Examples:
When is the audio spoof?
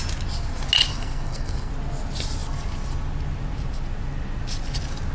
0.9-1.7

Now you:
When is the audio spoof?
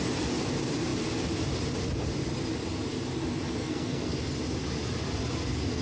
3.6-4.1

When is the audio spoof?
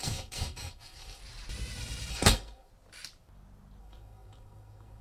0.0-1.2; 2.1-2.7; 3.8-5.0